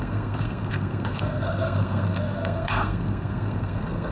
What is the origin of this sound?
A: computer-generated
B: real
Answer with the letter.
A